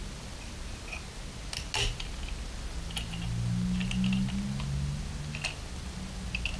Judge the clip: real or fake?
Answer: real